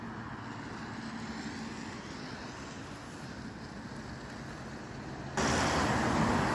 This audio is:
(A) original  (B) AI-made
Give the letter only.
A